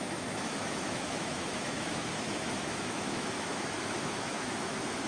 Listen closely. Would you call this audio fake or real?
fake